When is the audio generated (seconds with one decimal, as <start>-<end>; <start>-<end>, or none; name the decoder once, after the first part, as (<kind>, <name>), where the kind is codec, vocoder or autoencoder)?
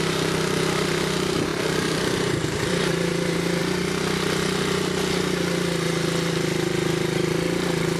1.5-3.6 (vocoder, BigVGAN v2)